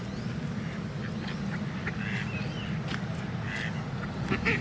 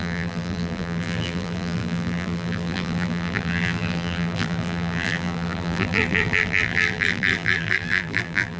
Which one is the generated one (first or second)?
second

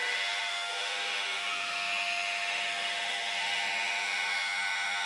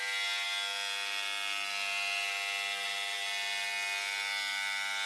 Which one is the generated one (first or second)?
first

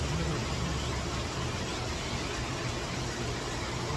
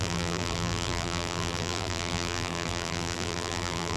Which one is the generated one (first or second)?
second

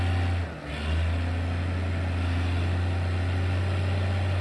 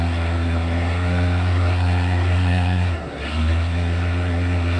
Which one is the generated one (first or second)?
second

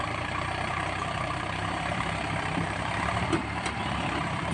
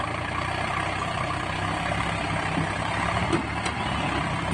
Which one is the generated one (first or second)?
first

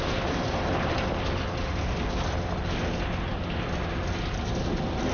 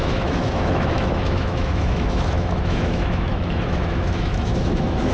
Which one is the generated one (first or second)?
second